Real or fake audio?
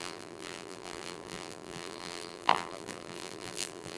fake